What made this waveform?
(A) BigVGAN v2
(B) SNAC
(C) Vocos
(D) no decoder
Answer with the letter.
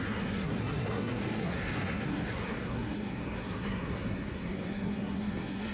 B